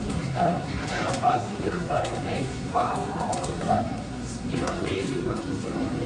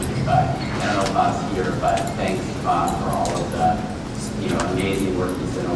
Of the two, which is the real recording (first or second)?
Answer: second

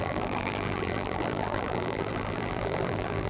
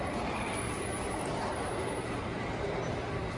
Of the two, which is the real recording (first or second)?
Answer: second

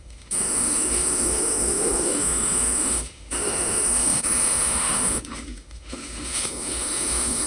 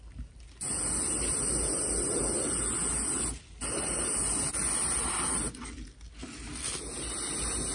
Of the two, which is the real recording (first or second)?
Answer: second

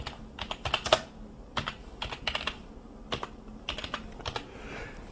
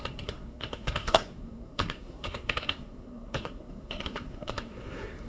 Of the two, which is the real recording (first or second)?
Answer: first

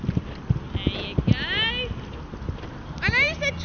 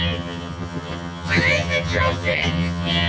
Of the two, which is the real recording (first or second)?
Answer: first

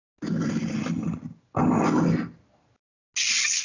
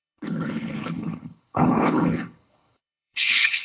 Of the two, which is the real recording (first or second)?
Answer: first